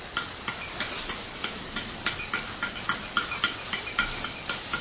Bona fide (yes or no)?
yes